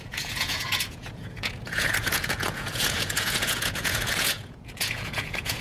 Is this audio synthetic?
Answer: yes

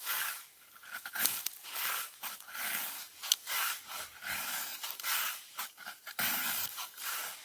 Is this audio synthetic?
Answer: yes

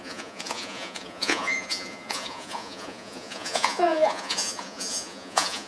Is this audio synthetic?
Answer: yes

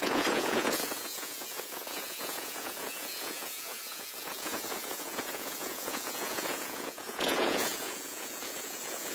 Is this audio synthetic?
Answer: yes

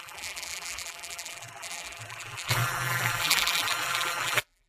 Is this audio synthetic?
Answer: yes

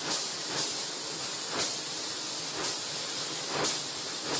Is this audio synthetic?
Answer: no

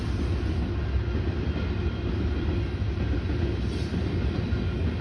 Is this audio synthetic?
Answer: no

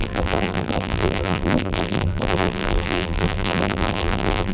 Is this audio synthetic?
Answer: yes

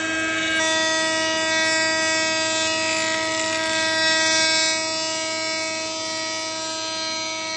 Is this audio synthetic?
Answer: no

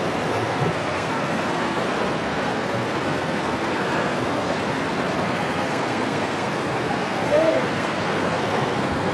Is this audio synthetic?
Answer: yes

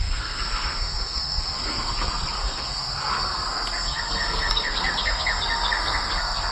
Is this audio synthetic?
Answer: yes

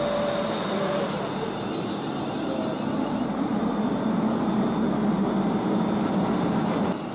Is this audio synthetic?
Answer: no